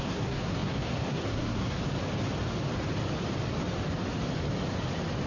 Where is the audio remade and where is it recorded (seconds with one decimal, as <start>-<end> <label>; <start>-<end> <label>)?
0.0-1.8 remade; 1.8-5.3 recorded